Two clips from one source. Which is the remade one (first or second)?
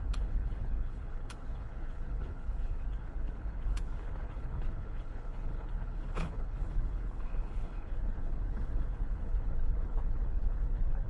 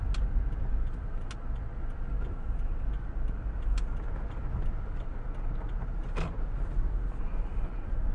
first